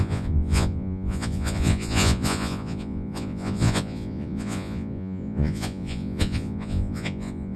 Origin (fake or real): fake